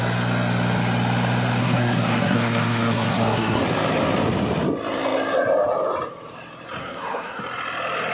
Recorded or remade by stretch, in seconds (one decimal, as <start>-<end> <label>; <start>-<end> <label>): 0.0-1.6 recorded; 1.6-3.6 remade; 3.6-6.8 recorded; 6.8-7.4 remade; 7.4-8.1 recorded